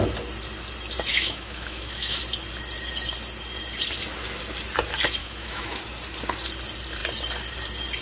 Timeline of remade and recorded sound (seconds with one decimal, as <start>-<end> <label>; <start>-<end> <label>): 0.0-1.1 recorded; 1.1-2.2 remade; 2.2-5.2 recorded; 5.2-5.8 remade; 5.8-8.0 recorded